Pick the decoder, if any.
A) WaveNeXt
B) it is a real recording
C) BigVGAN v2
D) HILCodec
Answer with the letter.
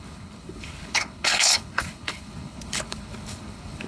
D